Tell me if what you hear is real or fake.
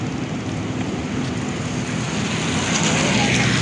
real